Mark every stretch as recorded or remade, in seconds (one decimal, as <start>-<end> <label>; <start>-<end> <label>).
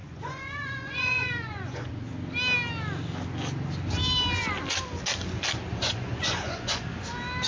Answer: 0.0-1.9 remade; 1.9-5.8 recorded; 5.8-6.8 remade; 6.8-7.5 recorded